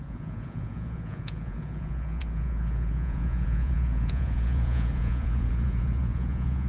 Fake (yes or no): yes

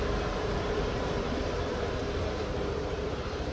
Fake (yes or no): yes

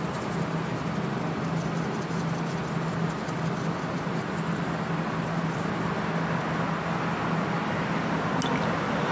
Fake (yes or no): no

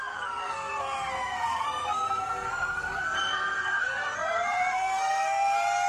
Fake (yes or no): yes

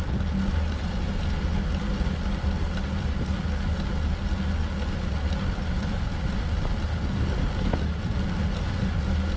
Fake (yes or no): no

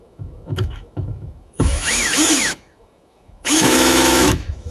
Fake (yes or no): yes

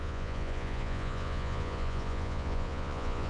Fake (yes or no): yes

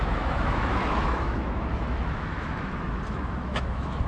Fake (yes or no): yes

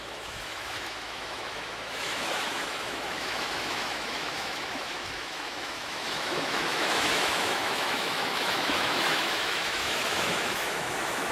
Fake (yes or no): yes